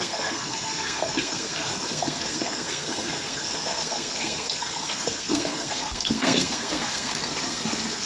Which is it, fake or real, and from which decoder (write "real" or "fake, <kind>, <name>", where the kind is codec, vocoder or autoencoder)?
fake, codec, SNAC